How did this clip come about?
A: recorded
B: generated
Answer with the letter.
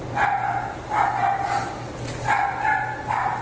A